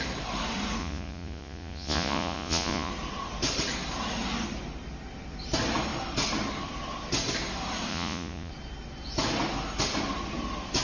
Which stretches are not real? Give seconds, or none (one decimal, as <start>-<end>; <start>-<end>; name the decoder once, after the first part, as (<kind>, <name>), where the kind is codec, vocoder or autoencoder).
0.8-2.9 (vocoder, Vocos); 7.9-8.5